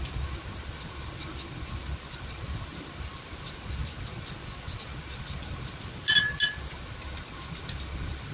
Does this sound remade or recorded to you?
recorded